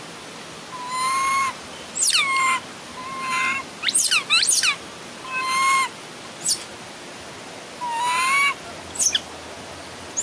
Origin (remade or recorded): recorded